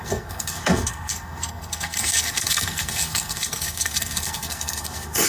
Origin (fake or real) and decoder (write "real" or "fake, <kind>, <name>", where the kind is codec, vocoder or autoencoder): fake, codec, SNAC